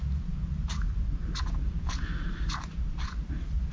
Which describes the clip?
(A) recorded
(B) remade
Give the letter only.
A